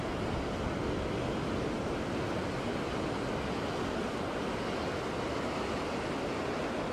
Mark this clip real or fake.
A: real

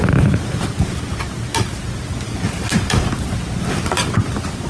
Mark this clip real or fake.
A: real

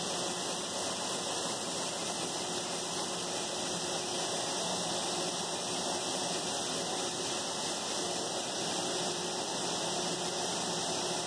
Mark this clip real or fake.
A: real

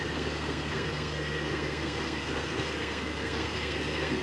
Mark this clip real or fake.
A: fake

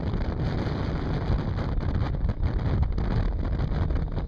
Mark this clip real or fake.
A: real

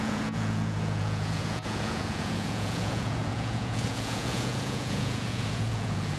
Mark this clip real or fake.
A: fake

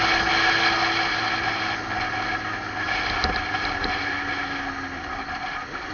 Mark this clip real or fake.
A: real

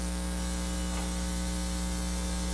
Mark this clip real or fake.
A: fake